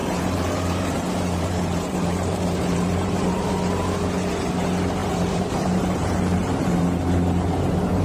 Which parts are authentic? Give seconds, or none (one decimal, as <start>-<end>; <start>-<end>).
3.5-5.0; 6.8-8.0

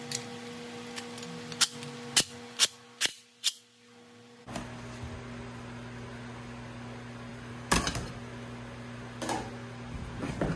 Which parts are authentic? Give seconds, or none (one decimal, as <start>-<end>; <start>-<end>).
0.0-10.6

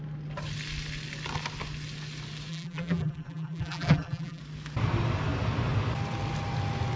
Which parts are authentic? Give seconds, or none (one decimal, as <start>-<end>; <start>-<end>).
0.0-2.5; 4.4-7.0

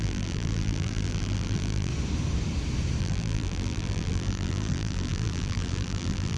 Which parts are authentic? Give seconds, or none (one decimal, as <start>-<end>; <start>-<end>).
1.9-3.0

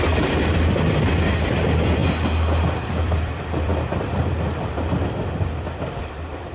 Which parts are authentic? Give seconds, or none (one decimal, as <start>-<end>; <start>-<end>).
2.0-2.9